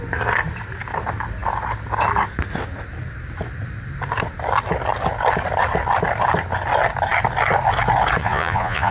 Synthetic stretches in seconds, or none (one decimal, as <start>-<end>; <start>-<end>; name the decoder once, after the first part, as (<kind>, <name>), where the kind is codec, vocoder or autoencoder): 8.2-8.9 (vocoder, Vocos)